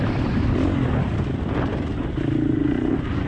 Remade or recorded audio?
recorded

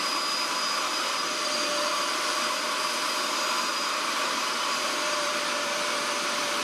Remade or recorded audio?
remade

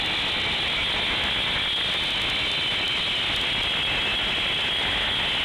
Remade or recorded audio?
recorded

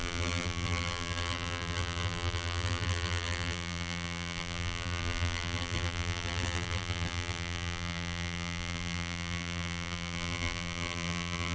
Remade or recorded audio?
remade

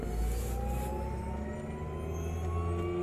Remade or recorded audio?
recorded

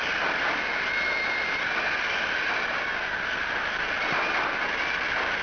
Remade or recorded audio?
remade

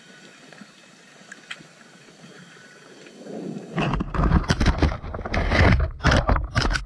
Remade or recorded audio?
remade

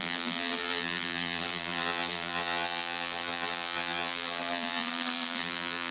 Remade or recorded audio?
remade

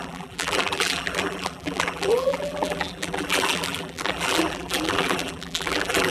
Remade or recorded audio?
remade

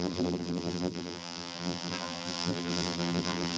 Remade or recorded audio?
remade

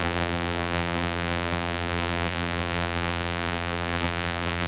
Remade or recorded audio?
remade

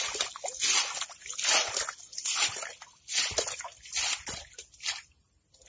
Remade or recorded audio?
recorded